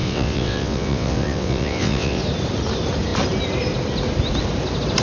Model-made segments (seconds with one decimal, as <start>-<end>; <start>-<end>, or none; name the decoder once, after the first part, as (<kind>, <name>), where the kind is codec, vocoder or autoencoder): 0.0-2.2 (vocoder, WaveNeXt)

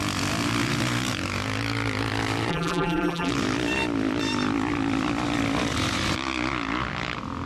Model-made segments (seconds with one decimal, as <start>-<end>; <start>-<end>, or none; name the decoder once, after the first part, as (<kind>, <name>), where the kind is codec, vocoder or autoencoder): 2.5-3.3 (vocoder, BigVGAN v2)

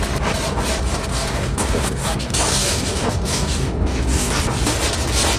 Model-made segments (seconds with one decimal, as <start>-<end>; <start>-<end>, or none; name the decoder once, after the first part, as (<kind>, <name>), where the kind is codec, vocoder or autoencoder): 1.1-4.3 (codec, DAC)

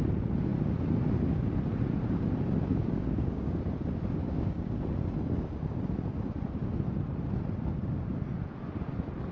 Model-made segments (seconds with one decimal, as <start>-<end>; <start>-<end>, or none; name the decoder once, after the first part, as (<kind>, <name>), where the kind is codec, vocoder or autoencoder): 2.7-3.6 (codec, DAC); 4.2-4.8

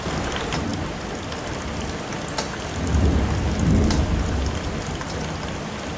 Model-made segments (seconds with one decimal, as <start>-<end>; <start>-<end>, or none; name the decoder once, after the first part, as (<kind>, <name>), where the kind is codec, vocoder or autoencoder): none